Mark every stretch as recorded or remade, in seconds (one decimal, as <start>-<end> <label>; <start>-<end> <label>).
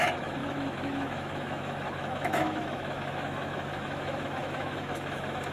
0.0-5.5 remade